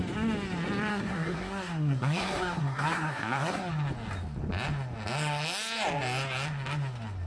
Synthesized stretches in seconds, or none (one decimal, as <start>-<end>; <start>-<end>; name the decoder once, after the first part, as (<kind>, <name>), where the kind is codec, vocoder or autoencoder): 0.9-3.7 (codec, SNAC)